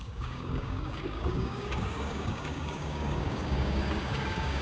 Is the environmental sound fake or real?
fake